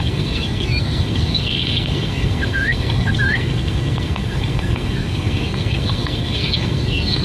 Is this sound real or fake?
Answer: fake